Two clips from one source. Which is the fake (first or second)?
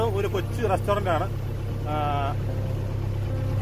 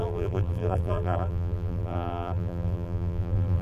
second